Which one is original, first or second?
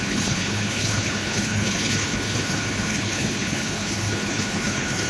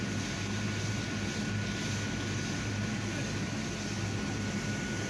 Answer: second